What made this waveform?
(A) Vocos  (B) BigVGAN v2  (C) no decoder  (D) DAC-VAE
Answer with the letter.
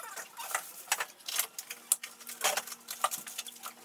C